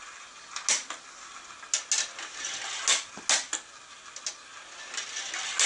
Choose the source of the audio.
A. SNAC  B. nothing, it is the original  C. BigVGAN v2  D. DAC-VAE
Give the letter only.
B